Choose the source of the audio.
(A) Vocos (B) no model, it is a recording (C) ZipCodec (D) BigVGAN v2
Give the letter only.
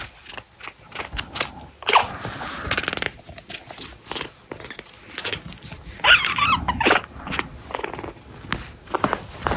B